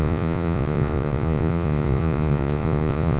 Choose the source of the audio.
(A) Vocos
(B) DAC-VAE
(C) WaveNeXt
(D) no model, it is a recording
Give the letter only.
A